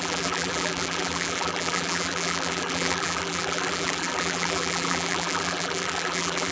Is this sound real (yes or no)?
no